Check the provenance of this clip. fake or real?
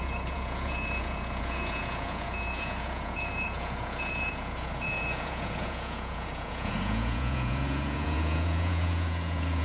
fake